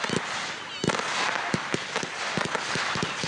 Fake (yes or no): no